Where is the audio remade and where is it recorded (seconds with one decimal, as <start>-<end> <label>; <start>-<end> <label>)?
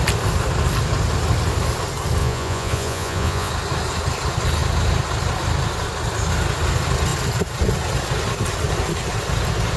0.0-2.2 recorded; 2.2-3.5 remade; 3.5-9.8 recorded